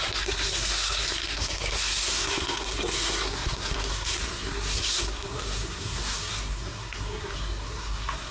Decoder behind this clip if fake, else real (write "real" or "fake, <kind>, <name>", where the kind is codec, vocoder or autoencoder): fake, codec, SNAC